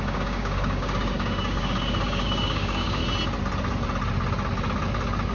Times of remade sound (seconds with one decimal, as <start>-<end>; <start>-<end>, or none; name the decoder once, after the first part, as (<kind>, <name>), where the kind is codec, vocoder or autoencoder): 0.0-3.0 (codec, DAC)